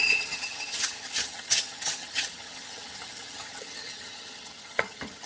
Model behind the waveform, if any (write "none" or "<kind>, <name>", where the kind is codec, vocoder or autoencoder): vocoder, HiFi-GAN